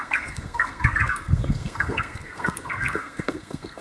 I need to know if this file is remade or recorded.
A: remade